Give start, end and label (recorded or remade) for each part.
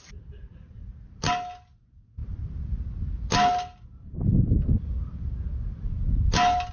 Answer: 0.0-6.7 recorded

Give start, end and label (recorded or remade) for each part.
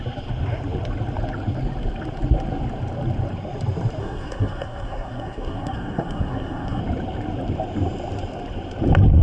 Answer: 0.0-4.0 recorded; 4.0-6.8 remade; 6.8-9.2 recorded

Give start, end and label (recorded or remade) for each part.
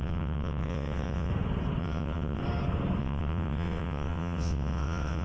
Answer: 0.0-1.3 remade; 1.3-1.8 recorded; 1.8-2.4 remade; 2.4-3.0 recorded; 3.0-5.2 remade